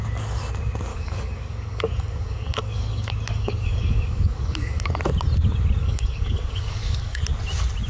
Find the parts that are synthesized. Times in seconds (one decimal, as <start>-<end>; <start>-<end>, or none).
0.9-5.0; 5.8-7.2